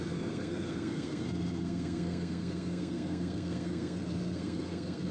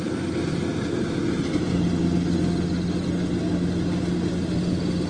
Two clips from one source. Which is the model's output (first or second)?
first